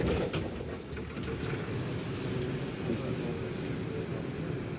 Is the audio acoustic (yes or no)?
yes